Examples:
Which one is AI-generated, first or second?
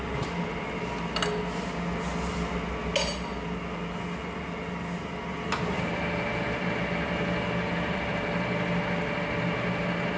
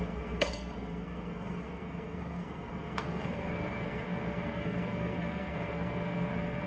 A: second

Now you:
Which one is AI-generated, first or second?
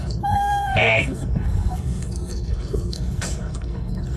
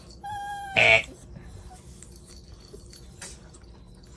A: first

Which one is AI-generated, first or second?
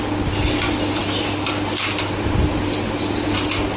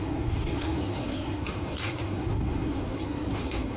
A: second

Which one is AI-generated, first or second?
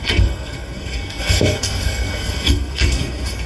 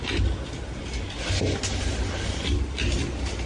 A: first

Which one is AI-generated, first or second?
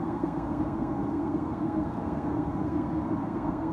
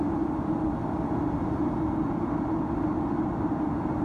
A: first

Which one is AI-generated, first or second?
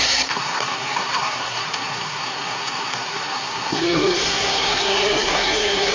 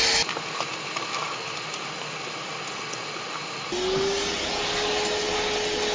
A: first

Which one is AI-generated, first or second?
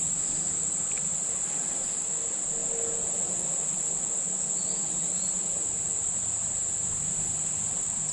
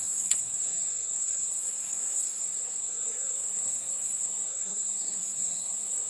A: second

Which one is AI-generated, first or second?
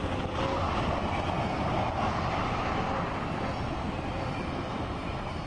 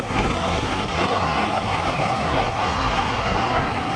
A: second